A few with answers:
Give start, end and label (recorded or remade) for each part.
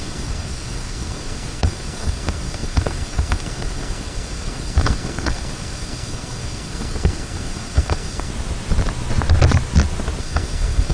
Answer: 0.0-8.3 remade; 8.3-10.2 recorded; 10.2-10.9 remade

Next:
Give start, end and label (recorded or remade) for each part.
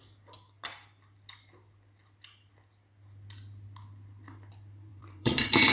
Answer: 0.0-4.9 recorded; 4.9-5.7 remade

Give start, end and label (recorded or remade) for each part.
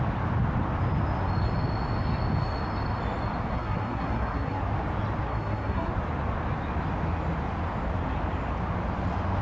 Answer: 0.0-3.5 recorded; 3.5-4.6 remade; 4.6-5.3 recorded; 5.3-5.9 remade; 5.9-9.4 recorded